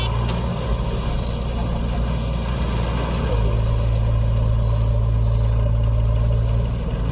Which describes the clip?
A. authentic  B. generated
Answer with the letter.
A